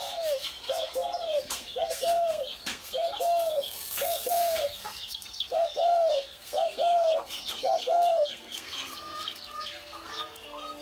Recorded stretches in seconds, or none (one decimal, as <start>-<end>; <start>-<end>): none

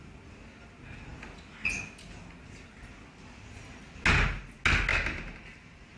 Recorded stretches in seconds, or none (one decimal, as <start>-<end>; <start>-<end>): 0.0-4.9

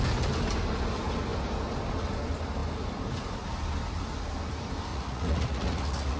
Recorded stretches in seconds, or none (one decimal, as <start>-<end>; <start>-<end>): 0.0-4.9

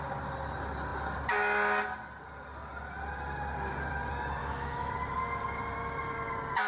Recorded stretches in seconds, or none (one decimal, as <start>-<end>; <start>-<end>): 0.0-4.4; 4.9-6.7

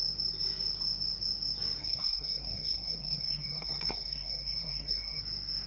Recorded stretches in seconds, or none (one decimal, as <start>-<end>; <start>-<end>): 0.0-1.8; 5.2-5.7

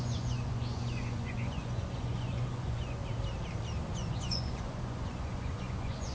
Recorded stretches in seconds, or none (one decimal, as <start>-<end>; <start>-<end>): 3.0-3.9

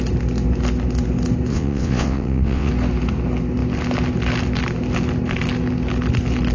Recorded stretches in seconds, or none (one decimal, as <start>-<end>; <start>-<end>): 0.0-1.5; 2.7-6.5

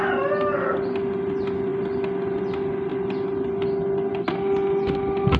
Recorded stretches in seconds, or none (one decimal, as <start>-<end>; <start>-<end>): 0.0-5.4